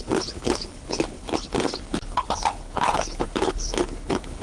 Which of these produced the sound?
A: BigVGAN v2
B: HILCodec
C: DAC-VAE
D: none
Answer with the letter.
B